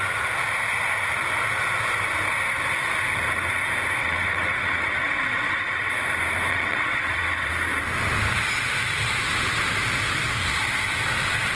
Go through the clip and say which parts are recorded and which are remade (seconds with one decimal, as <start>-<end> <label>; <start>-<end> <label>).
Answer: 0.0-4.0 recorded; 4.0-5.9 remade; 5.9-6.5 recorded; 6.5-7.5 remade; 7.5-11.5 recorded